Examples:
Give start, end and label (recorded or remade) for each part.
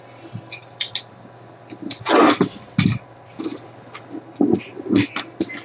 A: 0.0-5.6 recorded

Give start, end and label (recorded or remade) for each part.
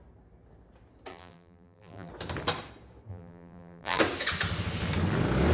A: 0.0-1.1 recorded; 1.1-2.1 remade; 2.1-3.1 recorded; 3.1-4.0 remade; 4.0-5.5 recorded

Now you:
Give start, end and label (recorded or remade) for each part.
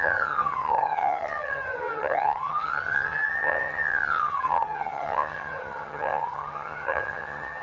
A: 0.0-7.6 remade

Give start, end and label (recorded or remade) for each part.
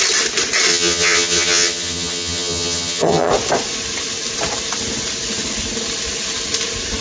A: 0.0-0.7 recorded; 0.7-3.3 remade; 3.3-7.0 recorded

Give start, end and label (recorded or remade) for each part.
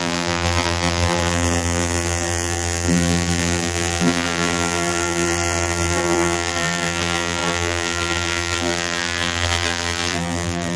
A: 0.0-10.8 remade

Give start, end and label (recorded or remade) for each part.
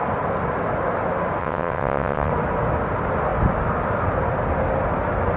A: 0.0-1.4 recorded; 1.4-2.3 remade; 2.3-5.4 recorded